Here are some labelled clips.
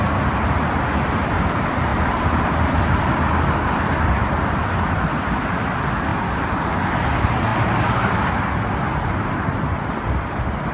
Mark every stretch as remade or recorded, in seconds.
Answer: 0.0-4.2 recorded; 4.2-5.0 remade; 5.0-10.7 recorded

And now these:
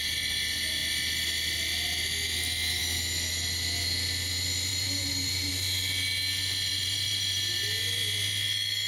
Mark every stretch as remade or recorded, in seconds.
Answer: 0.0-4.7 recorded; 4.7-5.5 remade; 5.5-6.7 recorded; 6.7-7.8 remade; 7.8-8.9 recorded

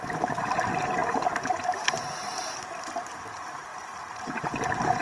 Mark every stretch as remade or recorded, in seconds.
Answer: 0.0-3.7 recorded; 3.7-5.0 remade

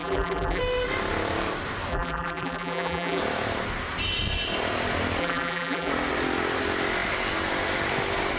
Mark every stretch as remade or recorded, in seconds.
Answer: 0.0-0.6 remade; 0.6-1.9 recorded; 1.9-3.2 remade; 3.2-5.2 recorded; 5.2-5.9 remade; 5.9-8.4 recorded

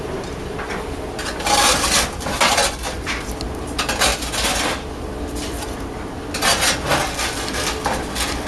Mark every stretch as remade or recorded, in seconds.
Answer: 0.0-8.5 recorded

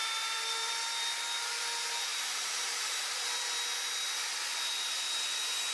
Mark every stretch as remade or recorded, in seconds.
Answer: 0.0-0.7 remade; 0.7-2.1 recorded; 2.1-3.1 remade; 3.1-5.7 recorded